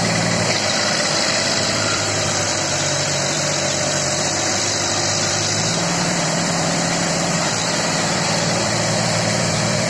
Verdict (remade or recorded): remade